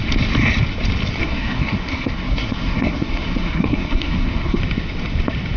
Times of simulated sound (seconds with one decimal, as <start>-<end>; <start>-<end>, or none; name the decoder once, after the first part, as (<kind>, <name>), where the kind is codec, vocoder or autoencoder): 1.2-4.6 (codec, SNAC)

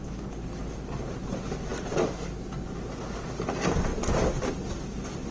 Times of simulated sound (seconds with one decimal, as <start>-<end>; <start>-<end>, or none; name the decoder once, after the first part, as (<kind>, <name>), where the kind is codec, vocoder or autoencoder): none

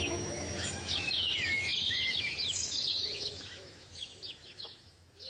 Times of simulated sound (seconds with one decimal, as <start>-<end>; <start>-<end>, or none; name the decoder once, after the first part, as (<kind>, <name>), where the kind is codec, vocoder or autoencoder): 0.0-5.3 (autoencoder, DAC-VAE)

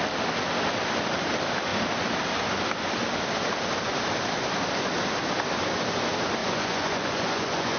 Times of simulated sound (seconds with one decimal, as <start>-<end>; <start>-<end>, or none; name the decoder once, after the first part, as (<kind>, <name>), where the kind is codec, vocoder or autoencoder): 6.4-7.8 (vocoder, Vocos)

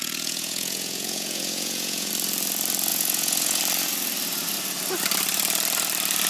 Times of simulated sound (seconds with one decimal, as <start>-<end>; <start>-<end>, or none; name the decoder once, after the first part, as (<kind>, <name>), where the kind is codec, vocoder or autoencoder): 0.0-2.1 (vocoder, Vocos); 2.9-3.6

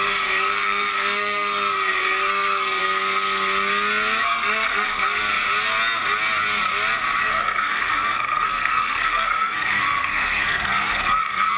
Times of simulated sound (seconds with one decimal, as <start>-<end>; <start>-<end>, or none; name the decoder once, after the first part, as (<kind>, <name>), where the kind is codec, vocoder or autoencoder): 0.0-2.8 (codec, SNAC); 4.2-5.2; 7.2-11.6

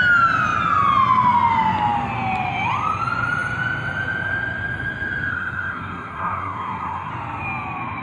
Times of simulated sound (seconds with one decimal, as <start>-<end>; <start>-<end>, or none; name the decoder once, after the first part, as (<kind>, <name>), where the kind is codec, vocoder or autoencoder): 5.3-7.1 (codec, SNAC)